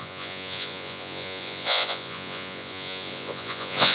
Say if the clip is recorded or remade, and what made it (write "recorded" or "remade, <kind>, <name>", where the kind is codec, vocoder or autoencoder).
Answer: remade, vocoder, Vocos